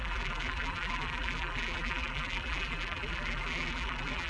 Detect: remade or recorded remade